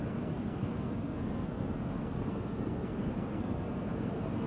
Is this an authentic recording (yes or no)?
no